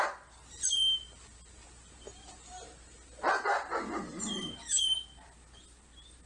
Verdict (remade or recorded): recorded